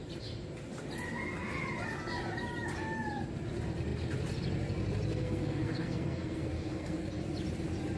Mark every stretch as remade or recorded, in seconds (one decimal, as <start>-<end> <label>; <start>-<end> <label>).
0.0-5.1 recorded; 5.1-7.1 remade; 7.1-8.0 recorded